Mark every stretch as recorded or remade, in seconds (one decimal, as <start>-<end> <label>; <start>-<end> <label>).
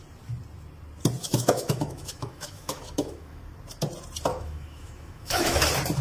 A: 0.0-1.2 recorded; 1.2-3.4 remade; 3.4-4.3 recorded; 4.3-5.6 remade; 5.6-6.0 recorded